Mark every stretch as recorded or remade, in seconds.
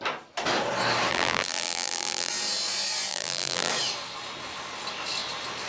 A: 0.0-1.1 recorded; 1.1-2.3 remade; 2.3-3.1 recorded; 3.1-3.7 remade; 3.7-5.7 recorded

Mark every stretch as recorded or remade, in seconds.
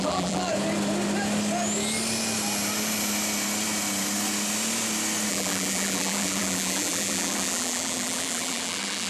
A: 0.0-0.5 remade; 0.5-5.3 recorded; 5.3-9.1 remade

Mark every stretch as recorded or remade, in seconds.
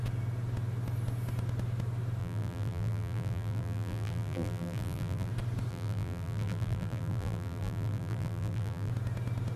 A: 0.0-2.2 recorded; 2.2-5.3 remade; 5.3-5.7 recorded; 5.7-8.9 remade; 8.9-9.6 recorded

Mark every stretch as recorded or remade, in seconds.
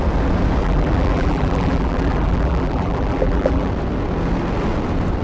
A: 0.0-0.6 recorded; 0.6-3.7 remade; 3.7-5.2 recorded